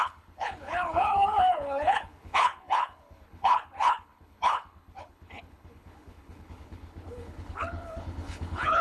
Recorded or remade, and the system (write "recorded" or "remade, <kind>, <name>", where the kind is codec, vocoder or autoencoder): remade, codec, HILCodec